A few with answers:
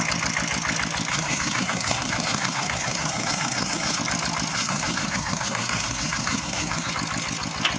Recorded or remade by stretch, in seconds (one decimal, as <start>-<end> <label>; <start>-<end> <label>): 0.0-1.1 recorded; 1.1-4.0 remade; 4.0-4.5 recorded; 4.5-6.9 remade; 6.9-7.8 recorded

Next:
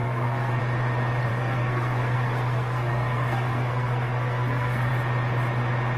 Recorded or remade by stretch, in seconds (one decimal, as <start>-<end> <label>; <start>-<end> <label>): 0.0-0.6 remade; 0.6-1.3 recorded; 1.3-4.9 remade; 4.9-6.0 recorded

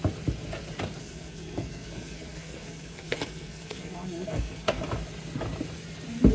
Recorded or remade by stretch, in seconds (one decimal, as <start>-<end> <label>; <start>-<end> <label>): 0.0-1.0 recorded; 1.0-4.8 remade; 4.8-6.3 recorded

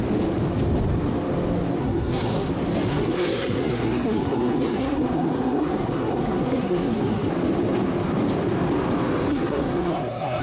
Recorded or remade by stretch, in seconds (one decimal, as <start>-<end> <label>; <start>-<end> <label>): 0.0-1.8 recorded; 1.8-2.5 remade; 2.5-2.9 recorded; 2.9-7.3 remade; 7.3-9.3 recorded; 9.3-10.4 remade